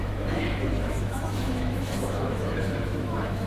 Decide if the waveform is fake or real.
fake